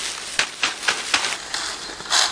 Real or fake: real